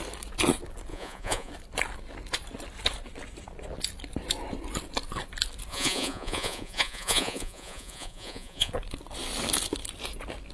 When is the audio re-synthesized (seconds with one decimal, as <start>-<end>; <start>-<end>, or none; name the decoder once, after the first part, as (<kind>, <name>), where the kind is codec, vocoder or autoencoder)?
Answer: 0.9-1.5 (vocoder, Vocos); 5.7-8.7